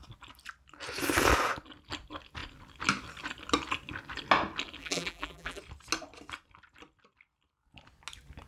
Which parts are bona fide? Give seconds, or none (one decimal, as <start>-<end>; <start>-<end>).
0.0-4.8; 5.6-8.5